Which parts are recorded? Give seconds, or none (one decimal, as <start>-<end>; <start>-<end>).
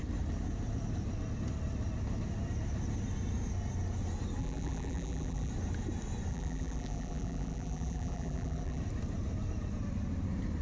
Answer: 0.0-4.4; 5.5-6.3; 8.8-10.6